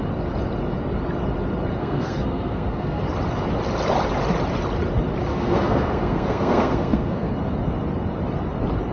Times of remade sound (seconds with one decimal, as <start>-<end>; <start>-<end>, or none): 1.8-3.0; 5.3-7.3

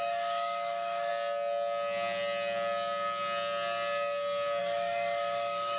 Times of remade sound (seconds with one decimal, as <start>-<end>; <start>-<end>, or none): 0.0-1.1; 4.6-5.8

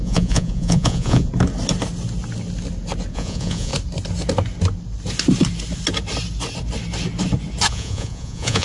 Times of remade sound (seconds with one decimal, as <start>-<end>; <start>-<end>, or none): 0.0-1.3; 3.1-3.7; 7.7-8.6

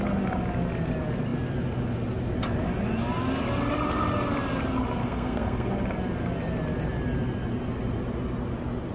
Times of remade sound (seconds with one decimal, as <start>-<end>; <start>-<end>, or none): 5.0-5.7

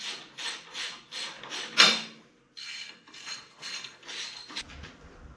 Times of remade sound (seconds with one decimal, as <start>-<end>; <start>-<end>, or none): 2.6-4.0

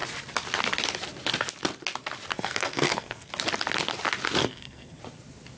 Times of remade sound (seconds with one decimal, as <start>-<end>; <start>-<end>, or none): 2.3-3.3; 4.4-5.0